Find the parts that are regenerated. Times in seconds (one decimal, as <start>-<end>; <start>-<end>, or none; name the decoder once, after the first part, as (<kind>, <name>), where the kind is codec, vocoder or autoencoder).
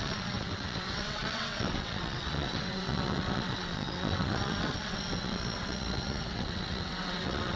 0.0-7.6 (vocoder, WaveNeXt)